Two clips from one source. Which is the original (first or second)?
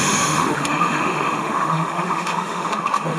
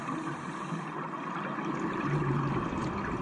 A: second